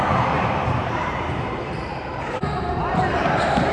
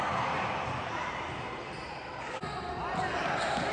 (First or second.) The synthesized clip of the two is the first